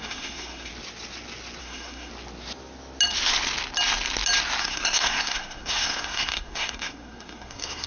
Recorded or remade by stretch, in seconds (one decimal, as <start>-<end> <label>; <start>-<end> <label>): 0.0-0.7 remade; 0.7-1.6 recorded; 1.6-2.1 remade; 2.1-4.6 recorded; 4.6-7.9 remade

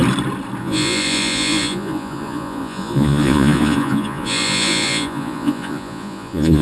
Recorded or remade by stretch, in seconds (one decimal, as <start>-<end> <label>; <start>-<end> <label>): 0.0-0.6 recorded; 0.6-6.6 remade